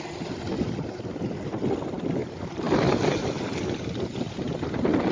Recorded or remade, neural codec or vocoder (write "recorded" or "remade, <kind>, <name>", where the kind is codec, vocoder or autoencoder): recorded